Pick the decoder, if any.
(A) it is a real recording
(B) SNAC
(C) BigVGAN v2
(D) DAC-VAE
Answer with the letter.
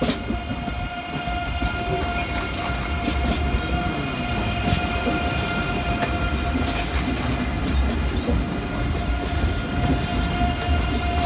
A